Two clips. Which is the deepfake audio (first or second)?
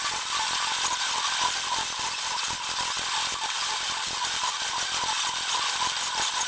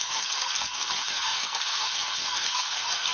second